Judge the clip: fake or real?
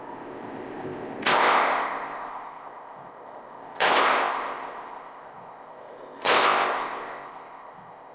fake